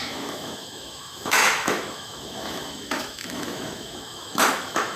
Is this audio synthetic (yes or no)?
yes